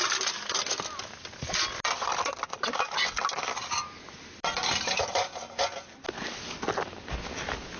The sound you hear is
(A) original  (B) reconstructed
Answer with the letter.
A